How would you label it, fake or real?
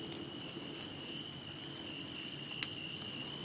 real